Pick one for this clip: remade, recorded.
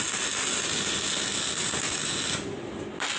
recorded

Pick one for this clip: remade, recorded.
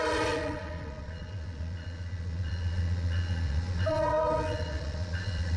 remade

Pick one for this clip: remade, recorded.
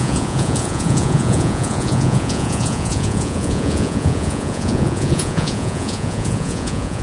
remade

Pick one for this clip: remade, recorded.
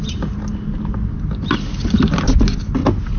recorded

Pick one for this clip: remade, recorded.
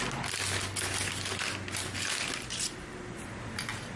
recorded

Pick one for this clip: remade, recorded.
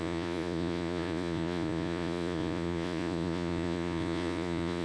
remade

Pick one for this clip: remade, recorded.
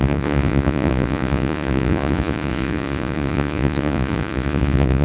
remade